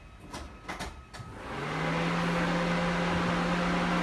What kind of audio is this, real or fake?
real